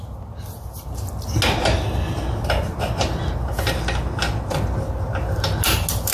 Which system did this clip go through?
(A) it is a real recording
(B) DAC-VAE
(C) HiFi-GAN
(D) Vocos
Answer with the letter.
A